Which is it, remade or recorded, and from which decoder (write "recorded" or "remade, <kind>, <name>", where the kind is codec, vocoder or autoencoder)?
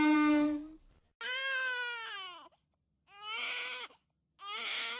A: recorded